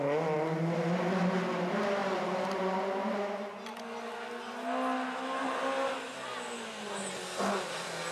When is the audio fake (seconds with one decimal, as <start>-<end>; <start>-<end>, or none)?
2.0-2.6